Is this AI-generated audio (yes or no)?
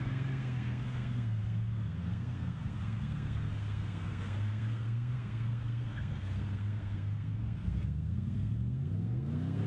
yes